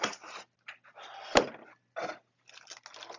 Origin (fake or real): real